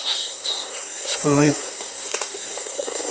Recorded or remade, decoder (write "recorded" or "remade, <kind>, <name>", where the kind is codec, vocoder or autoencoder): remade, codec, SNAC